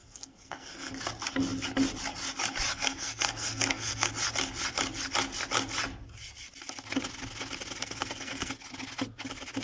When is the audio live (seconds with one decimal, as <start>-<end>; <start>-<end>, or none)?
0.9-2.7; 4.1-7.8; 8.5-9.6